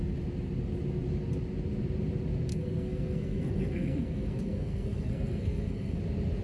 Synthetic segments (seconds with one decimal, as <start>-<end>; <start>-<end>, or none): 2.5-6.0